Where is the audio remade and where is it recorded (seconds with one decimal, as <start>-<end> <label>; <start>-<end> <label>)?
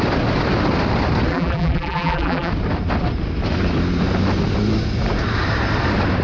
0.0-1.3 recorded; 1.3-2.5 remade; 2.5-6.2 recorded